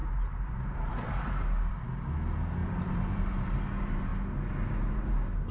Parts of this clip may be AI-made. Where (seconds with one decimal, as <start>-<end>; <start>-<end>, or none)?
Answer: 0.0-1.7; 2.6-3.6